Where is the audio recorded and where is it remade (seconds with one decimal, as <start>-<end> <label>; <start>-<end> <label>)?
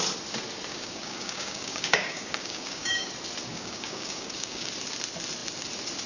0.0-0.7 recorded; 0.7-3.1 remade; 3.1-3.5 recorded; 3.5-4.7 remade; 4.7-6.1 recorded